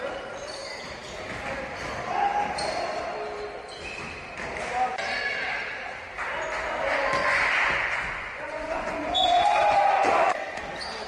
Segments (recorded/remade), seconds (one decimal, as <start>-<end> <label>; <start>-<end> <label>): 0.0-7.2 recorded; 7.2-10.6 remade; 10.6-11.1 recorded